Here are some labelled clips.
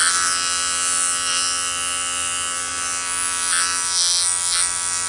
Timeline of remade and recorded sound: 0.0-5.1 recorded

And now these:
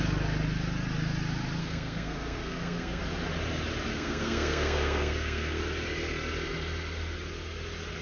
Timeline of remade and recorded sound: 0.0-1.6 recorded; 1.6-3.0 remade; 3.0-3.9 recorded; 3.9-5.6 remade; 5.6-8.0 recorded

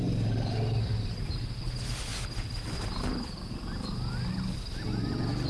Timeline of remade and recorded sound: 0.0-5.5 recorded

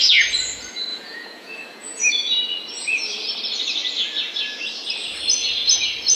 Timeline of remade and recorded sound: 0.0-0.9 recorded; 0.9-2.1 remade; 2.1-6.2 recorded